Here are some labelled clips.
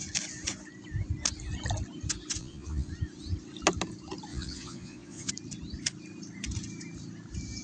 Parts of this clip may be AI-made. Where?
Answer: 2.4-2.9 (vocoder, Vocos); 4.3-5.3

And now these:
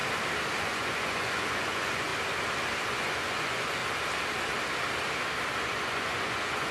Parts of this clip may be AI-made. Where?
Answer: 0.6-2.1 (vocoder, Vocos); 2.9-3.8; 5.6-6.7

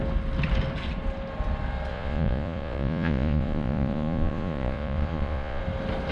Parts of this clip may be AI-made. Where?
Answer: 1.9-5.6 (vocoder, Vocos)